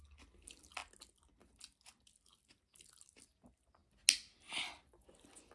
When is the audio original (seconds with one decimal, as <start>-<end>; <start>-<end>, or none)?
0.0-5.5